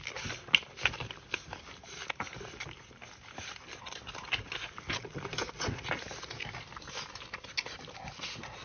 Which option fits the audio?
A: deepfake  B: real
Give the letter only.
B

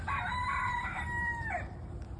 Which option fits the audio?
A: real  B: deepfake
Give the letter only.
B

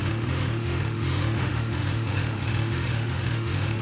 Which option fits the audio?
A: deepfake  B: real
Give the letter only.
A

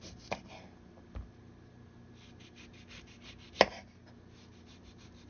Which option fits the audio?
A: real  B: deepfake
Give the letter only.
A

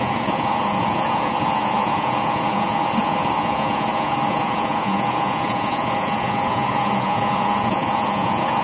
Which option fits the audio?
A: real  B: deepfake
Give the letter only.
B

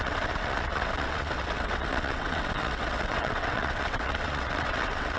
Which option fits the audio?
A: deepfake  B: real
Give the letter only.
A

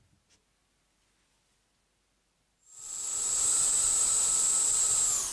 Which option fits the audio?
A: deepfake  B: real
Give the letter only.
B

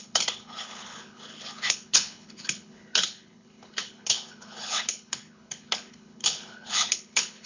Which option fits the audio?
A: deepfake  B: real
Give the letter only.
A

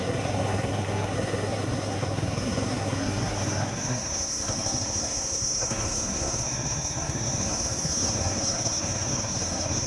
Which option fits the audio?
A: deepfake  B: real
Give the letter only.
A